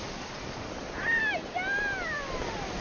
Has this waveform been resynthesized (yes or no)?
no